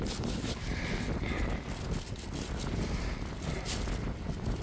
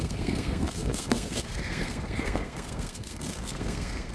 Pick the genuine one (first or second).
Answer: first